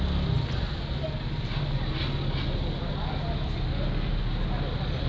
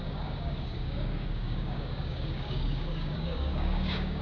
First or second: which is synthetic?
second